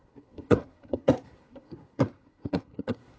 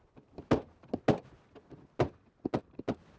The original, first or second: second